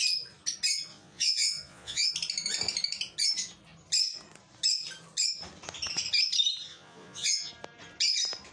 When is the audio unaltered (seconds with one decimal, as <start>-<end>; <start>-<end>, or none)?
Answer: 0.0-0.9; 2.1-6.7; 7.5-8.5